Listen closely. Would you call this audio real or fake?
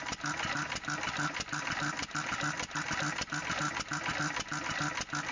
real